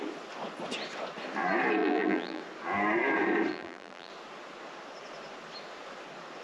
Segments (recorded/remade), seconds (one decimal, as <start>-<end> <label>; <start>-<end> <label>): 0.0-1.8 recorded; 1.8-2.4 remade; 2.4-3.5 recorded; 3.5-4.1 remade; 4.1-6.4 recorded